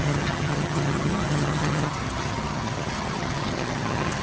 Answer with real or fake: fake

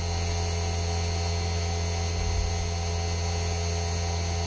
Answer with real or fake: real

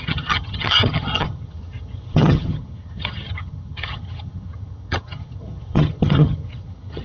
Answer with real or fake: fake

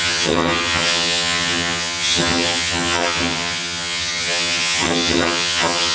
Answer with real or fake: fake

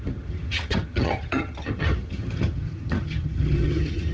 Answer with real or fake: fake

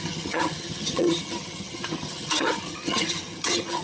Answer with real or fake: fake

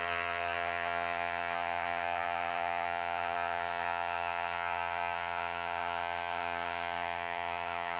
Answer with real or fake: fake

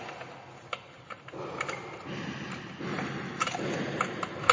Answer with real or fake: real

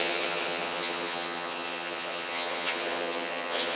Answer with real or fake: fake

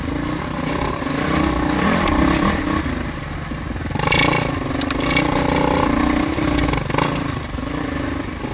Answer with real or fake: real